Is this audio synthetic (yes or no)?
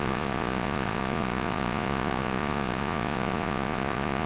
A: yes